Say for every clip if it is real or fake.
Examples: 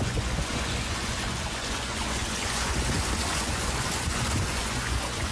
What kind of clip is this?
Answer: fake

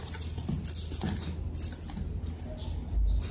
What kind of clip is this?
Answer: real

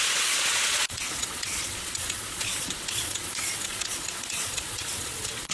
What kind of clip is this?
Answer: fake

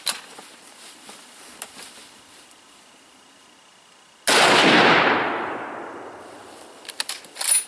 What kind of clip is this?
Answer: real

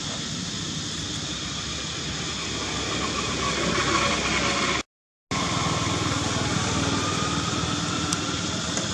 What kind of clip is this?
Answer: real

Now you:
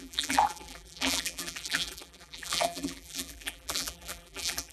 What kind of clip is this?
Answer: fake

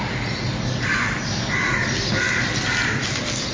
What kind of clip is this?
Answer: real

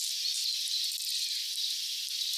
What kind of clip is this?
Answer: real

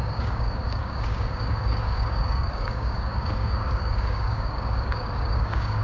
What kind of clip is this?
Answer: fake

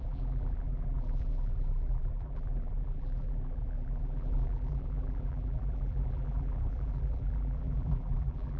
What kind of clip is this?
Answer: fake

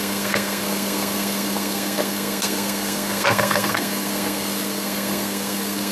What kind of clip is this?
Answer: fake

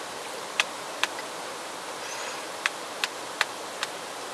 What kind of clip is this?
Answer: real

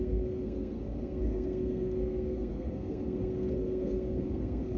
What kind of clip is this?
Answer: fake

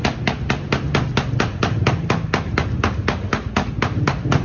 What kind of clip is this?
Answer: real